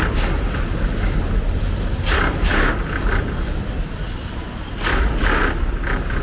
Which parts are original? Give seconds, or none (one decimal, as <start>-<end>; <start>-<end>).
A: 0.0-6.2